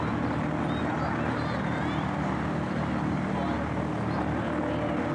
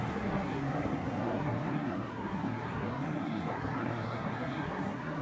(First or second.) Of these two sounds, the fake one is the second